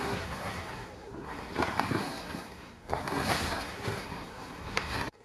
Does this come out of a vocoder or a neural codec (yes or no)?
yes